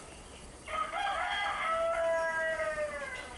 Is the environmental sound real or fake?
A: real